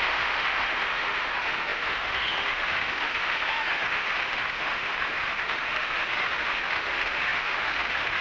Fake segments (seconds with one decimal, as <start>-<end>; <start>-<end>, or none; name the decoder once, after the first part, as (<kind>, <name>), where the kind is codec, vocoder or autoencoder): 0.0-8.2 (autoencoder, DAC-VAE)